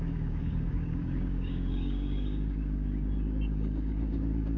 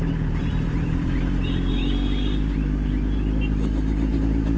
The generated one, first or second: first